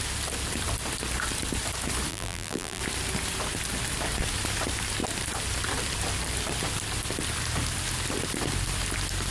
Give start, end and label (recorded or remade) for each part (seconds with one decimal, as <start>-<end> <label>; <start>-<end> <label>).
0.0-2.1 recorded; 2.1-2.8 remade; 2.8-9.3 recorded

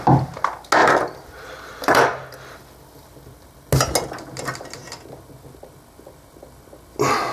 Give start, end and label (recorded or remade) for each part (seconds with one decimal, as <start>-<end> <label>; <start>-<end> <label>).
0.0-0.8 recorded; 0.8-3.7 remade; 3.7-7.3 recorded

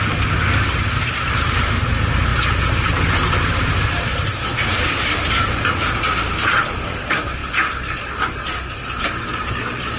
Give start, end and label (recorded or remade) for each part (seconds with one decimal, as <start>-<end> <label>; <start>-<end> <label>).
0.0-2.3 remade; 2.3-2.9 recorded; 2.9-7.4 remade; 7.4-9.0 recorded; 9.0-10.0 remade

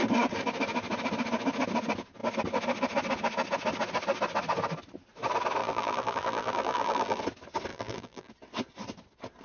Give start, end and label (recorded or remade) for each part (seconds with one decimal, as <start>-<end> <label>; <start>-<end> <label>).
0.0-5.6 recorded; 5.6-7.2 remade; 7.2-7.7 recorded; 7.7-8.3 remade; 8.3-9.4 recorded